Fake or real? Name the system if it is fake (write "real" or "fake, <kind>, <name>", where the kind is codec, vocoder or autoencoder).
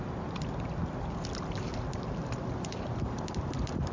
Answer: real